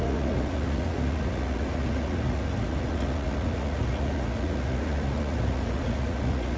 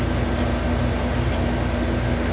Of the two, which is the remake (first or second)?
first